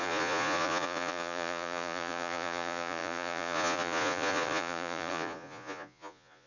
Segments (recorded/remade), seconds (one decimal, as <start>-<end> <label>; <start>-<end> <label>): 0.0-6.5 remade